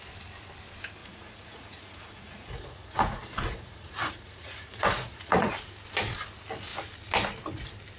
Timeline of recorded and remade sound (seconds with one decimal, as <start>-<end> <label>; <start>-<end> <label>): 0.0-1.0 recorded; 1.0-5.5 remade; 5.5-8.0 recorded